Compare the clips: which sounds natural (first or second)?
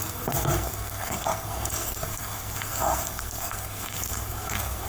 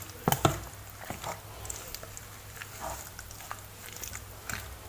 second